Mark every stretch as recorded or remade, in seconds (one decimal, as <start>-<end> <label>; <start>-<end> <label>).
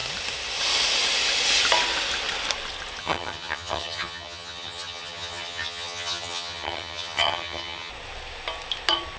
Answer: 0.0-3.0 recorded; 3.0-7.9 remade; 7.9-9.2 recorded